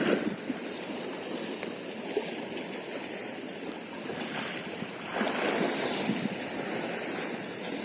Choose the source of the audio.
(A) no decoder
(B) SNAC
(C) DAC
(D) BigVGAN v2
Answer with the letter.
A